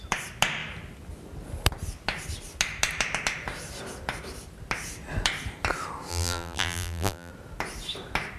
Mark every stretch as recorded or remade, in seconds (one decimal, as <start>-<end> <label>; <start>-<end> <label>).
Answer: 0.0-6.1 recorded; 6.1-7.3 remade; 7.3-8.4 recorded